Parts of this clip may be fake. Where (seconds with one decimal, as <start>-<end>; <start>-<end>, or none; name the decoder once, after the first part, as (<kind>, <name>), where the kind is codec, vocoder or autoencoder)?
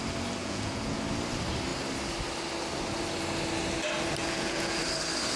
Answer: 0.4-1.0 (vocoder, Vocos); 4.2-4.8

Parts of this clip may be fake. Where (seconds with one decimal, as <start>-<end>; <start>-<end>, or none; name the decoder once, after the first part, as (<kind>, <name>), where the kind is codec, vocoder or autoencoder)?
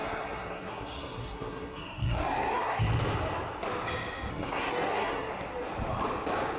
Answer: 0.0-2.8 (codec, SNAC); 4.3-5.3